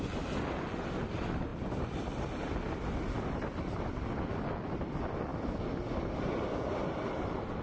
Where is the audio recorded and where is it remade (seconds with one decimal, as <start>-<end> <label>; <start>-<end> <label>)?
0.0-7.6 recorded